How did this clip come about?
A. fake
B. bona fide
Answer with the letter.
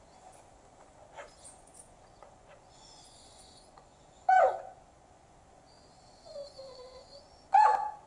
A